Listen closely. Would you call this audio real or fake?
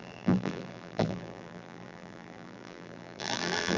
fake